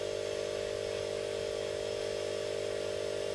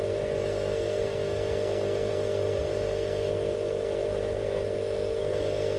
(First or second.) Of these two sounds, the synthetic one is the second